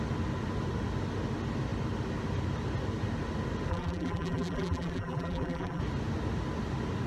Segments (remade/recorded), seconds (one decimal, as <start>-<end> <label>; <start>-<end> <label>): 0.0-3.7 recorded; 3.7-5.8 remade; 5.8-7.1 recorded